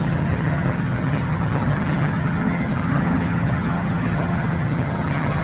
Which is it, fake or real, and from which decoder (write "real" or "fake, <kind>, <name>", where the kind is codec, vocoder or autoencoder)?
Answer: fake, vocoder, HiFi-GAN